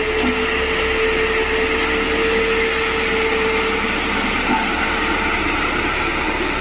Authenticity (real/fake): real